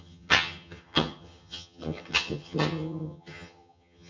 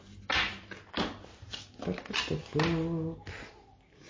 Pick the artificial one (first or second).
first